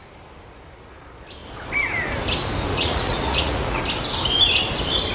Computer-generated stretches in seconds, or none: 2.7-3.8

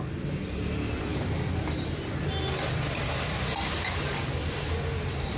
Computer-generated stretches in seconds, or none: none

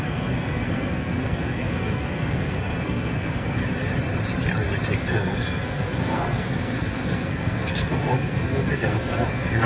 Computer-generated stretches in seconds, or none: 0.0-3.6; 5.0-9.7